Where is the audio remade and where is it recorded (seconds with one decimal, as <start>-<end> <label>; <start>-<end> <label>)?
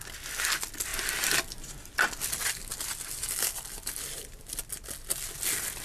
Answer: 0.0-5.8 recorded